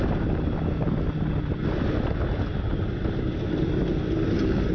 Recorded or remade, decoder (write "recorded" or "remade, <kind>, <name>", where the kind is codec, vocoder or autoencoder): recorded